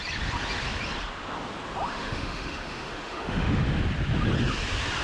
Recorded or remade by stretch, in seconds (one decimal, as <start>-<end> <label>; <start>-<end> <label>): 0.0-1.9 recorded; 1.9-3.8 remade; 3.8-5.0 recorded